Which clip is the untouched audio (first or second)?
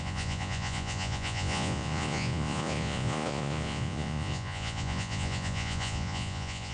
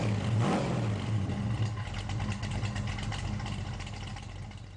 second